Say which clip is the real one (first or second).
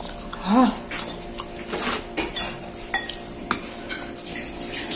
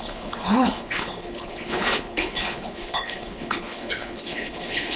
first